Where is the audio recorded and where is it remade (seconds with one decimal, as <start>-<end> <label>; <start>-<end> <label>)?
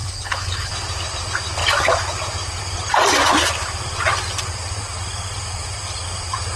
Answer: 0.0-0.7 remade; 0.7-6.6 recorded